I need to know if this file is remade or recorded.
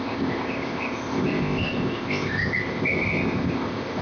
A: remade